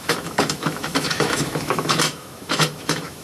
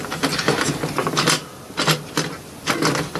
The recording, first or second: second